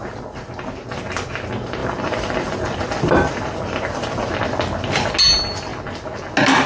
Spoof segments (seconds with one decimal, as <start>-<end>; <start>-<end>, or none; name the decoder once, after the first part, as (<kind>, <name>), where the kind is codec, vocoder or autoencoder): 1.8-4.3 (vocoder, BigVGAN v2)